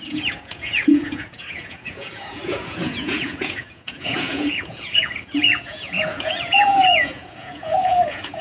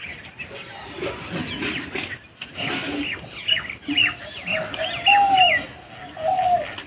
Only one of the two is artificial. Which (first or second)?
first